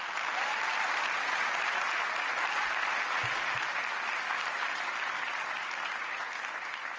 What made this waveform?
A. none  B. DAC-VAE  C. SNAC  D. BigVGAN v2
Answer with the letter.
A